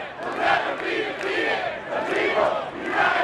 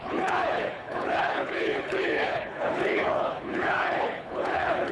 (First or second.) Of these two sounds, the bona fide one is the first